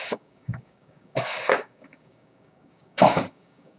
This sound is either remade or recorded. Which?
remade